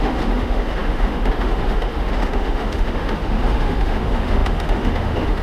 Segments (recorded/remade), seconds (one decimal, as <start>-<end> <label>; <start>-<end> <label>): 0.0-5.4 remade